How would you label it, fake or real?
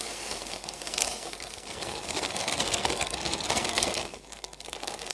fake